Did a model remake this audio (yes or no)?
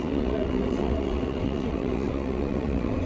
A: yes